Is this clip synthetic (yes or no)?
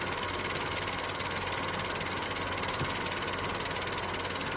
no